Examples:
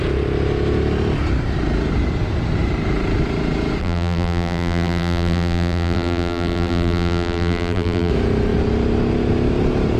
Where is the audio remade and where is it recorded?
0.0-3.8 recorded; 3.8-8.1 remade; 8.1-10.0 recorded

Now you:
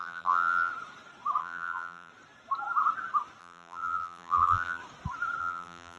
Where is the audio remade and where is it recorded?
0.0-0.7 remade; 0.7-1.4 recorded; 1.4-2.1 remade; 2.1-3.4 recorded; 3.4-4.8 remade; 4.8-5.4 recorded; 5.4-6.0 remade

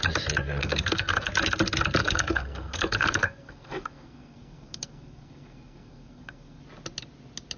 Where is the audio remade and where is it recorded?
0.0-0.6 recorded; 0.6-1.3 remade; 1.3-2.0 recorded; 2.0-6.6 remade; 6.6-7.6 recorded